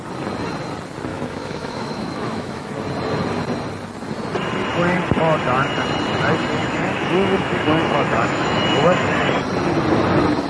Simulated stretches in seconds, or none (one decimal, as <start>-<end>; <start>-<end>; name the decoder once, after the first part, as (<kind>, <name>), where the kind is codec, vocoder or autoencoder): 1.1-2.7 (autoencoder, DAC-VAE); 6.6-9.1